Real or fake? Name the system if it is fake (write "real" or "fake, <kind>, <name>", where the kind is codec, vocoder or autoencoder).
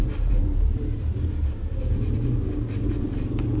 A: fake, vocoder, BigVGAN v2